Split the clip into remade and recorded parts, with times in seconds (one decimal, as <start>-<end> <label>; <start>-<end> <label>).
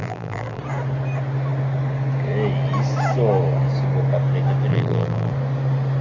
0.0-0.6 remade; 0.6-4.7 recorded; 4.7-5.3 remade; 5.3-6.0 recorded